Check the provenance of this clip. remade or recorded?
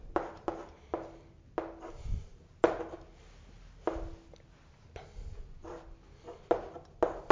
recorded